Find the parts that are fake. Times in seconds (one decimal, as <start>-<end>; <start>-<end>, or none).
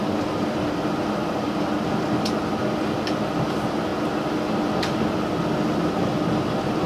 none